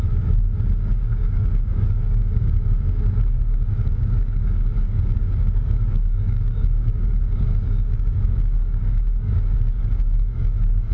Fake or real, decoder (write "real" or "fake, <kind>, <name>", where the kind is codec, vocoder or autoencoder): fake, codec, DAC